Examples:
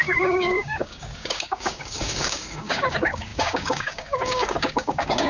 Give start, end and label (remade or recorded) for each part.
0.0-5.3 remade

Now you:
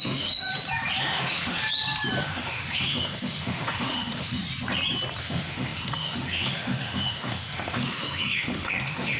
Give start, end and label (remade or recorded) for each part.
0.0-0.5 remade; 0.5-1.0 recorded; 1.0-1.6 remade; 1.6-2.2 recorded; 2.2-4.4 remade; 4.4-5.2 recorded; 5.2-9.2 remade

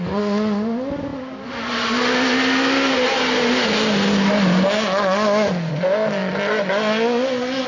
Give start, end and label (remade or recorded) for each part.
0.0-7.7 recorded